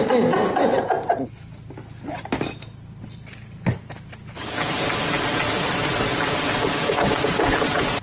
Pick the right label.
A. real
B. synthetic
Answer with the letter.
A